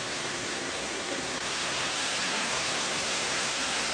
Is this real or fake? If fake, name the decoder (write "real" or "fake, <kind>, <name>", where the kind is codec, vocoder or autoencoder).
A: fake, codec, SNAC